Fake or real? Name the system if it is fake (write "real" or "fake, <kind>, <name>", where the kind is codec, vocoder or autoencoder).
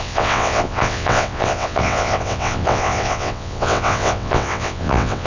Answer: fake, vocoder, WaveNeXt